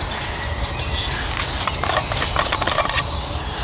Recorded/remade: recorded